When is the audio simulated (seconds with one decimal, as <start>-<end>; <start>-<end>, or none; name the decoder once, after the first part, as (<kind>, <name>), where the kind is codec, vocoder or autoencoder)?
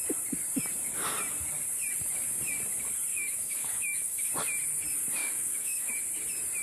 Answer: 3.1-4.3 (autoencoder, DAC-VAE); 5.2-5.9